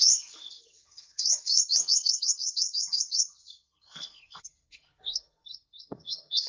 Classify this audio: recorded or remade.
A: remade